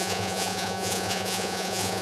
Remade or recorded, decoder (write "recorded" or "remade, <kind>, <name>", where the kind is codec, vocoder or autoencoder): remade, vocoder, Vocos